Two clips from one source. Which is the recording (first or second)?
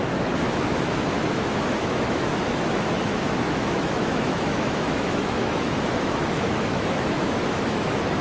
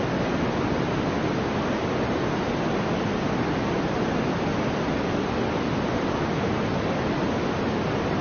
second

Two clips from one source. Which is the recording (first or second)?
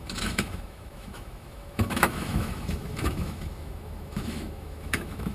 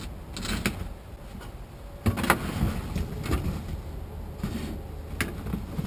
second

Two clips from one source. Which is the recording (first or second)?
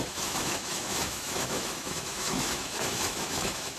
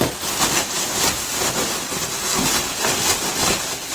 second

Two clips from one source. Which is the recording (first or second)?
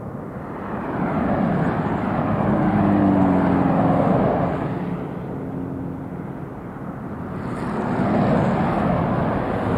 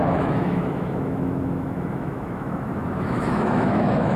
first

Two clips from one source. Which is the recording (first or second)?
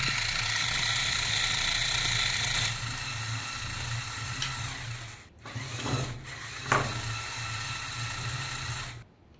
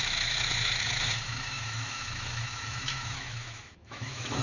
first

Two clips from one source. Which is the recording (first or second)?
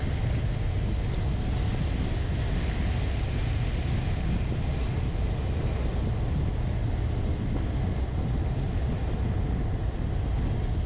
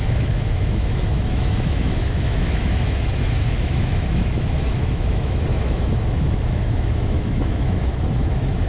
first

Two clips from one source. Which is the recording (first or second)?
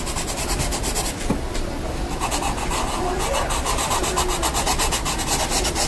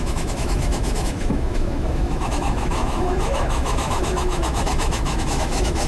first